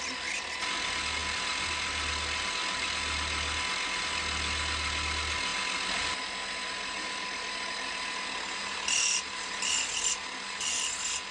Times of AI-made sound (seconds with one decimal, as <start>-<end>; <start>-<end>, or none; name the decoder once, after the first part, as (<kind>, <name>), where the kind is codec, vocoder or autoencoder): none